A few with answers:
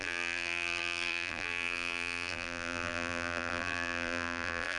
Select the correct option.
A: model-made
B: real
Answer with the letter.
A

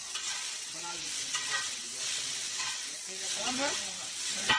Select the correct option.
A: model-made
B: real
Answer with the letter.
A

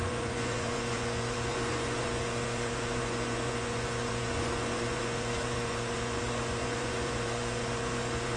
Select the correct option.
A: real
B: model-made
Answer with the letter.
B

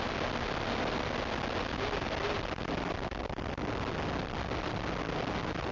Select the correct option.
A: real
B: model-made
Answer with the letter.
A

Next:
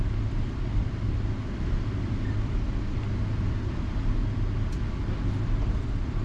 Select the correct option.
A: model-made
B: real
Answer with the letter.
B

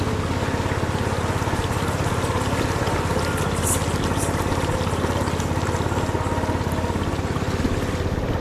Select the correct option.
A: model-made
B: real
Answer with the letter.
B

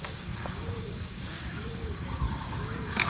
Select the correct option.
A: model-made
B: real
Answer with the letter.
A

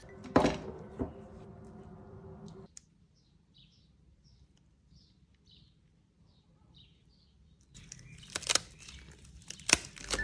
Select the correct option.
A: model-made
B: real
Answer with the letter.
A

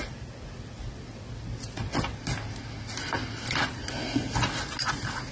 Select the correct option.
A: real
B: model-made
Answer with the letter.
A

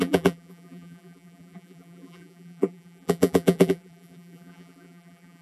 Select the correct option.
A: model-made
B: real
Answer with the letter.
A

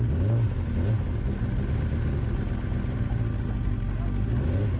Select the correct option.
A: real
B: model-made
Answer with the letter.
A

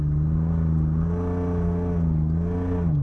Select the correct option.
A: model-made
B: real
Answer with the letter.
B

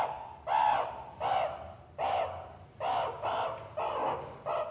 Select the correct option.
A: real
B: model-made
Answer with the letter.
A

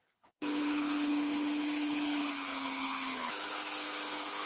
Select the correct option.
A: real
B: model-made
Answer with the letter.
B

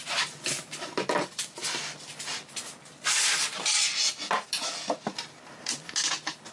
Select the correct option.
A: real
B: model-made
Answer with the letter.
A